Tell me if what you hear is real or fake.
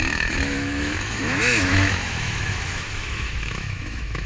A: fake